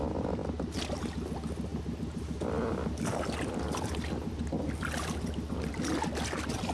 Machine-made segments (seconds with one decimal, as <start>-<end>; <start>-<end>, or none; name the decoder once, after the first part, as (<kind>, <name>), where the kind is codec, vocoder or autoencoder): none